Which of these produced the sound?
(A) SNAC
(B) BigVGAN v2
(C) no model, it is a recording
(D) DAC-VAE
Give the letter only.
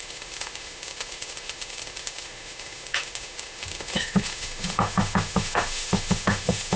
D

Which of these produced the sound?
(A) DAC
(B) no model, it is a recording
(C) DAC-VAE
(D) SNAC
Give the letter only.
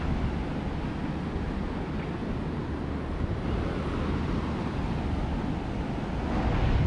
B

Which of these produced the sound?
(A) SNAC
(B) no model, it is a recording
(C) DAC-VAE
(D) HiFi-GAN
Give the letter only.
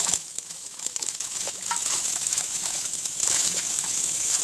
C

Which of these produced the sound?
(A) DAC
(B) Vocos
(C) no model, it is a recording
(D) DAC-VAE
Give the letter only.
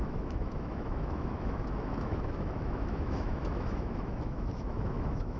D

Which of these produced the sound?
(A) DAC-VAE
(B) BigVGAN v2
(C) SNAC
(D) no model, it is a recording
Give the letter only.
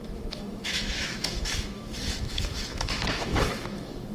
A